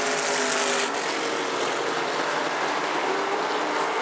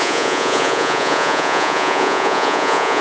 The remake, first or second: second